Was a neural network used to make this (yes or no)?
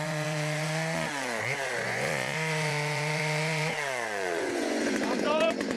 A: yes